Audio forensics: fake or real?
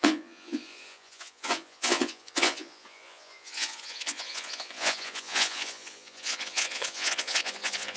fake